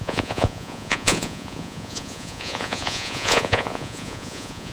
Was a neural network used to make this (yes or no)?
yes